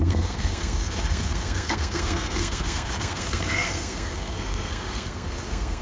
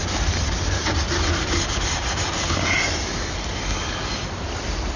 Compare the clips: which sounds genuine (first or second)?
second